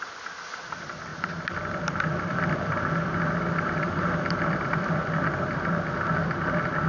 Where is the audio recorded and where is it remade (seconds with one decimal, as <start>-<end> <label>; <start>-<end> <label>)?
0.0-6.9 recorded